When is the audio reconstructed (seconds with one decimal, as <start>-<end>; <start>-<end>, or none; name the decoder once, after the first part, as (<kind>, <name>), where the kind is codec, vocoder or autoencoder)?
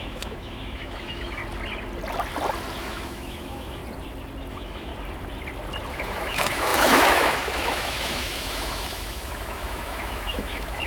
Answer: 0.0-1.4 (autoencoder, DAC-VAE); 2.8-3.8; 4.5-4.9; 5.9-10.9